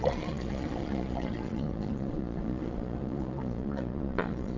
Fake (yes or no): yes